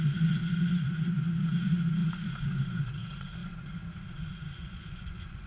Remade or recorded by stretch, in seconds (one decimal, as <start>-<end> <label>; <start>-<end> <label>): 0.0-5.5 remade